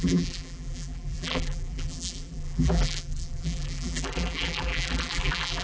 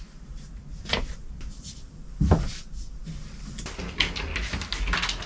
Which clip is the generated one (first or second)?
first